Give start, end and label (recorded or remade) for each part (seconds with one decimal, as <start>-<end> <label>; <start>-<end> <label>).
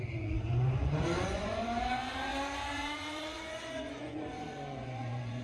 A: 0.0-5.4 remade